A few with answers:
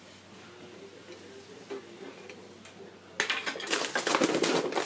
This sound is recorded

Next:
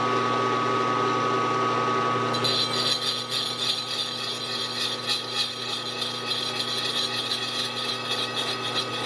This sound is recorded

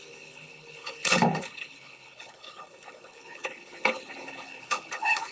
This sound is remade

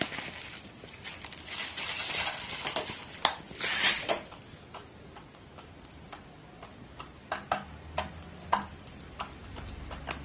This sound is recorded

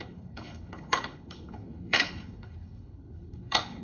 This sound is remade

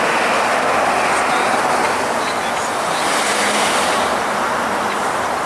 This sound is recorded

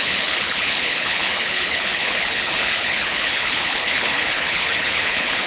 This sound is remade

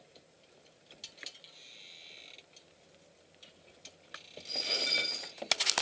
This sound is recorded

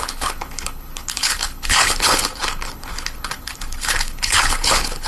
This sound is remade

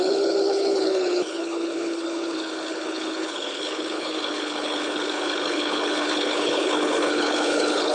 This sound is remade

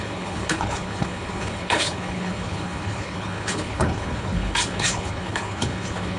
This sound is remade